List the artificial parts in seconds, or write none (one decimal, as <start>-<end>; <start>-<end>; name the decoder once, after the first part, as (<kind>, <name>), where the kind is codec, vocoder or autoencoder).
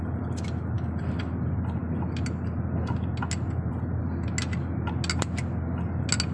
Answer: none